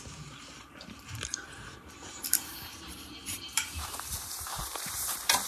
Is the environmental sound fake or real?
fake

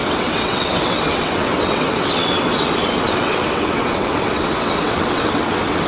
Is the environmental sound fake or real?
fake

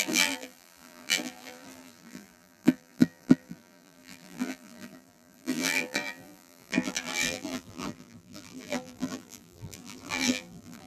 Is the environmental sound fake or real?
fake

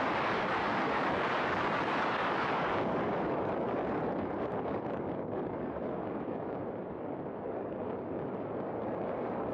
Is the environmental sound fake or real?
fake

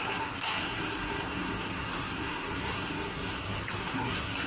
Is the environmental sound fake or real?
fake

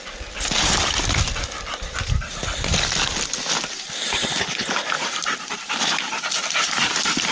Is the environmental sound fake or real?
real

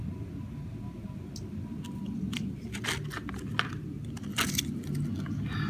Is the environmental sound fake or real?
real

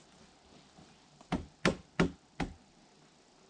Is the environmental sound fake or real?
real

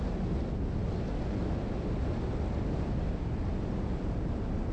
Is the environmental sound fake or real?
real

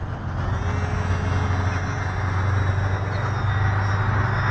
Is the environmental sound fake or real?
real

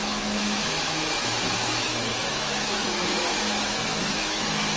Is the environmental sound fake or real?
fake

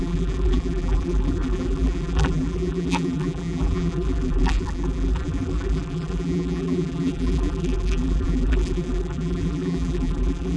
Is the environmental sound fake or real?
fake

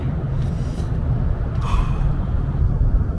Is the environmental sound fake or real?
real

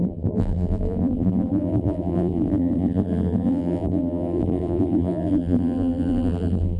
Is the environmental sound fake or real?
fake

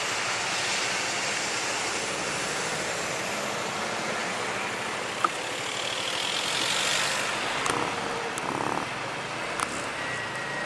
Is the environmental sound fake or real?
real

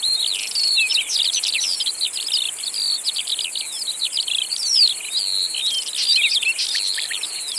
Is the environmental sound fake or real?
real